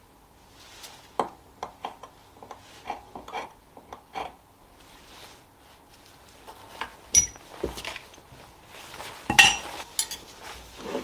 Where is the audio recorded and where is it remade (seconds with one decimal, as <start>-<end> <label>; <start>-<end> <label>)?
0.0-11.0 recorded